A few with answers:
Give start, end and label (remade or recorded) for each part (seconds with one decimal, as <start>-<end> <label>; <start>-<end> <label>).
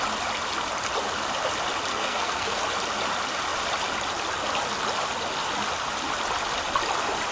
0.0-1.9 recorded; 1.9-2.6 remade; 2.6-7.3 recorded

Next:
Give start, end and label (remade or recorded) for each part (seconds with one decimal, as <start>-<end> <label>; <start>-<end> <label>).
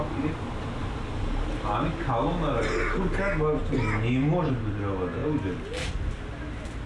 0.0-6.9 recorded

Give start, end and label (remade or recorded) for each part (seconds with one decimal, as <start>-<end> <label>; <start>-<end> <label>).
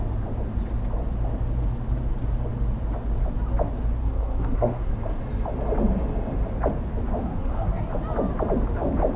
0.0-4.0 recorded; 4.0-4.9 remade; 4.9-7.2 recorded; 7.2-7.9 remade; 7.9-9.2 recorded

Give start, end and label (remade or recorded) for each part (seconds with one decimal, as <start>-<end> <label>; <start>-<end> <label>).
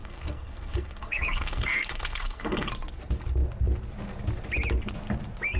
0.0-2.7 remade; 2.7-5.6 recorded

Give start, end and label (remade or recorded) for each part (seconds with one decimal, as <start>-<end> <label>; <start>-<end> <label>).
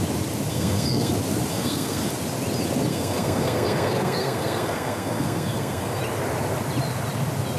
0.0-0.5 recorded; 0.5-1.1 remade; 1.1-1.5 recorded; 1.5-2.1 remade; 2.1-2.9 recorded; 2.9-6.0 remade; 6.0-7.6 recorded